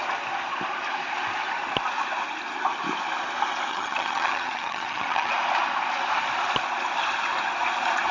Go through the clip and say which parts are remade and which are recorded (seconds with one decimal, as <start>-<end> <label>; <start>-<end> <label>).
0.0-3.7 recorded; 3.7-5.3 remade; 5.3-8.1 recorded